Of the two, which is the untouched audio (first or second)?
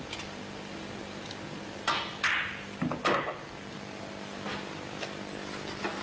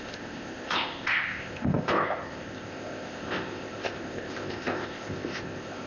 first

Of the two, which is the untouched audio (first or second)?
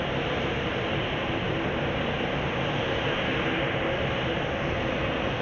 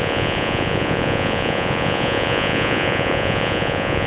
first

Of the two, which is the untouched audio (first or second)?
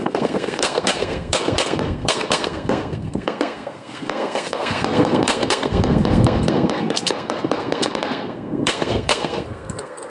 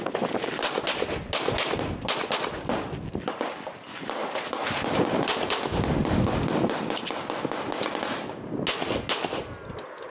second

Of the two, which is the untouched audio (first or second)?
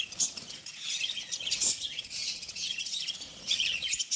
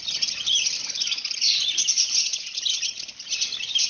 second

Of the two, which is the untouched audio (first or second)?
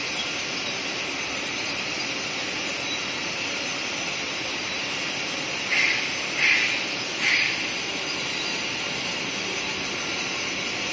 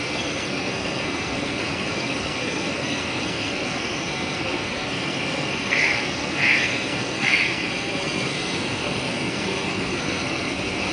first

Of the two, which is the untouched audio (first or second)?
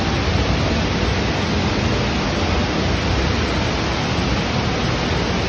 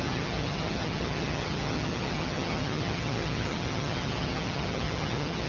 first